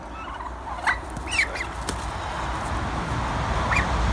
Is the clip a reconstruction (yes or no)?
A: no